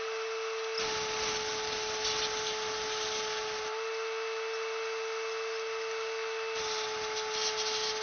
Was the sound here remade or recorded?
recorded